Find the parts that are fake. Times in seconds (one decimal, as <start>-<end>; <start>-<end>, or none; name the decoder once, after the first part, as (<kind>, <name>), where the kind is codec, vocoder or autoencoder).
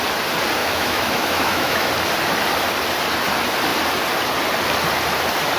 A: 0.6-1.9 (autoencoder, DAC-VAE)